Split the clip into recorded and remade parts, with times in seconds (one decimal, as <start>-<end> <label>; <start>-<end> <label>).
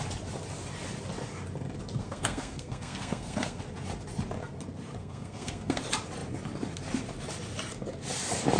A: 0.0-2.0 recorded; 2.0-3.6 remade; 3.6-5.0 recorded; 5.0-5.8 remade; 5.8-8.6 recorded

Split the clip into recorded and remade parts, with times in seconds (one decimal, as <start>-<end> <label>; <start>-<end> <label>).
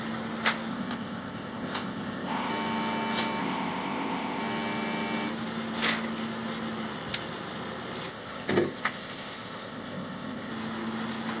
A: 0.0-0.7 recorded; 0.7-2.5 remade; 2.5-3.4 recorded; 3.4-4.4 remade; 4.4-8.1 recorded; 8.1-10.5 remade; 10.5-11.4 recorded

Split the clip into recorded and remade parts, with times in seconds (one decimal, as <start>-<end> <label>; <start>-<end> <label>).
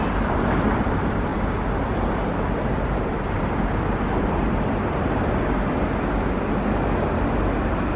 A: 0.0-8.0 recorded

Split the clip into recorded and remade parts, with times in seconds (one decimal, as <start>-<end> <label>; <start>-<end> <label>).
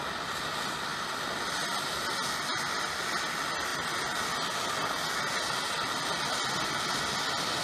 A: 0.0-7.6 recorded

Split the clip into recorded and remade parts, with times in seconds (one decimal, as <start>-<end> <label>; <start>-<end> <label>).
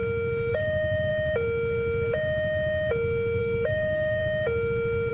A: 0.0-0.5 recorded; 0.5-1.1 remade; 1.1-3.4 recorded; 3.4-4.2 remade; 4.2-5.1 recorded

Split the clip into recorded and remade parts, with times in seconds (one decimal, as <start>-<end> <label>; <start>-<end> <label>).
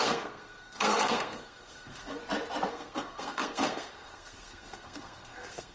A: 0.0-2.2 remade; 2.2-2.7 recorded; 2.7-5.7 remade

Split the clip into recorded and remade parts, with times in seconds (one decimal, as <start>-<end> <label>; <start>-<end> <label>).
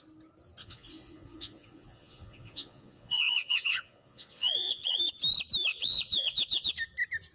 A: 0.0-0.6 recorded; 0.6-5.0 remade; 5.0-5.7 recorded; 5.7-6.7 remade; 6.7-7.3 recorded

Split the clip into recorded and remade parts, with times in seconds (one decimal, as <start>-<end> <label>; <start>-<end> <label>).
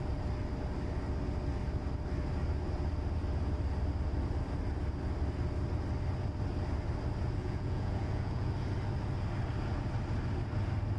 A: 0.0-7.4 recorded; 7.4-8.5 remade; 8.5-11.0 recorded